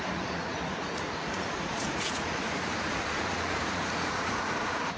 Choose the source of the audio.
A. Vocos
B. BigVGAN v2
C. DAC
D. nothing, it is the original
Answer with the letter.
A